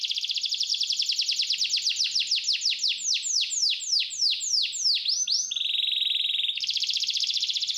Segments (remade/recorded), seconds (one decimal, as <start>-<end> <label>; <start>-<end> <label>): 0.0-7.8 recorded